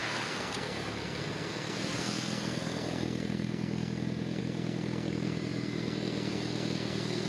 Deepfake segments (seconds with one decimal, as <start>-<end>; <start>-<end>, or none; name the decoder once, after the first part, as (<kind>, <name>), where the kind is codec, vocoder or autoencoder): 0.0-7.3 (codec, SNAC)